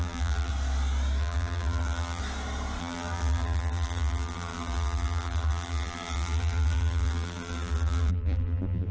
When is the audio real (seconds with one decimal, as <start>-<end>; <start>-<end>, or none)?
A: 0.5-1.2; 2.2-2.8